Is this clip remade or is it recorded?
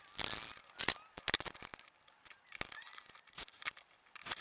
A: recorded